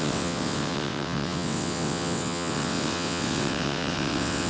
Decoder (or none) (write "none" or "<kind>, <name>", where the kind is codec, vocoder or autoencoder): vocoder, WaveNeXt